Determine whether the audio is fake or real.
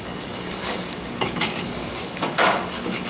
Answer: fake